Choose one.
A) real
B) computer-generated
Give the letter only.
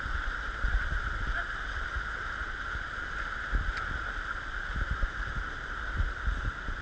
A